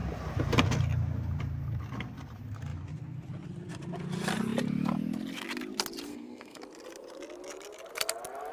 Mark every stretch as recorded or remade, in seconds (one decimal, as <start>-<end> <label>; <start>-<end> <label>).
0.0-6.1 recorded; 6.1-6.6 remade; 6.6-8.5 recorded